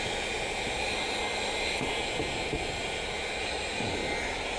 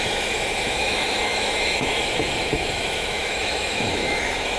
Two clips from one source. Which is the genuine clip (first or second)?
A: first